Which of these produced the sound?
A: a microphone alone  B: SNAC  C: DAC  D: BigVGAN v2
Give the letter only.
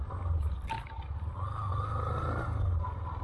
A